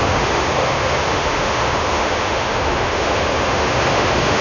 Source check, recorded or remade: remade